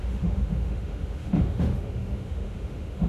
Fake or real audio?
fake